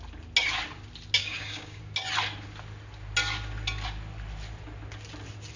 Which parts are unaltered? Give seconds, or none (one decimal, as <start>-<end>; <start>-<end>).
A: 0.0-1.2; 1.8-5.6